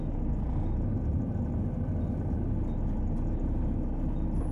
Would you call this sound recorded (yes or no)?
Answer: yes